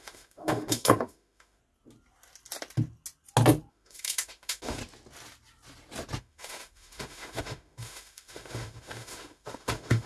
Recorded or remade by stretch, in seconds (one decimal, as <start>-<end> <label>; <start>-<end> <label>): 0.0-1.6 remade; 1.6-3.7 recorded; 3.7-4.8 remade; 4.8-6.2 recorded; 6.2-10.1 remade